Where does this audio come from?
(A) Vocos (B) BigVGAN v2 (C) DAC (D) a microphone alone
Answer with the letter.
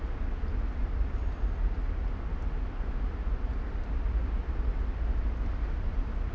D